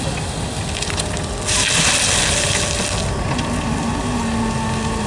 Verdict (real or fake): real